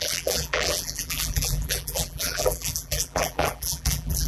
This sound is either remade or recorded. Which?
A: remade